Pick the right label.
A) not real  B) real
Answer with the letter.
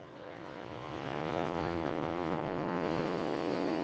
A